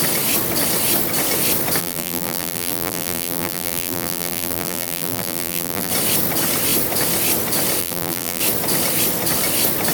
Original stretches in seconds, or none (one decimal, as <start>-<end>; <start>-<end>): 0.0-1.8; 5.9-7.8; 8.4-9.9